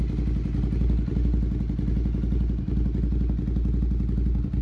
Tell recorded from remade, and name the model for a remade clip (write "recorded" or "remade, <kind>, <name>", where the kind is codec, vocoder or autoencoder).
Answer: recorded